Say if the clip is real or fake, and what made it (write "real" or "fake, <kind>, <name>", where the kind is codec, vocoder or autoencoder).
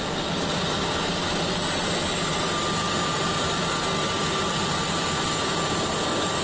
real